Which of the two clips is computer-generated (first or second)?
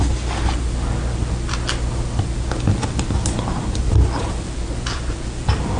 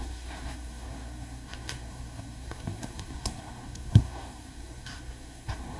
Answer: second